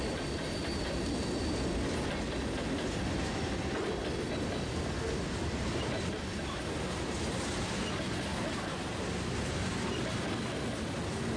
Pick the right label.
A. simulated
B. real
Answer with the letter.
B